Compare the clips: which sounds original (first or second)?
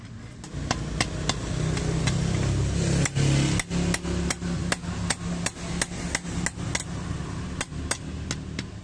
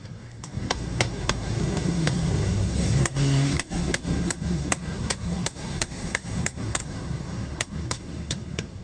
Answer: first